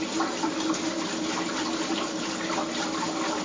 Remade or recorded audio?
recorded